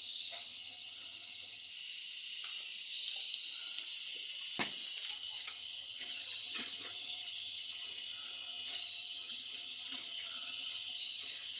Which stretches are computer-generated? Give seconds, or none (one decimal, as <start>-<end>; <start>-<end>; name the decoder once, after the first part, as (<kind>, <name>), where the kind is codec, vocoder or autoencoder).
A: 0.0-1.7 (vocoder, HiFi-GAN); 5.1-11.6